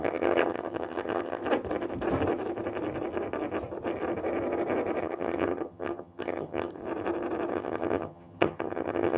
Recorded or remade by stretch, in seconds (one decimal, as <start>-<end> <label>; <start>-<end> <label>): 0.0-1.4 remade; 1.4-5.0 recorded; 5.0-6.8 remade; 6.8-7.5 recorded; 7.5-9.2 remade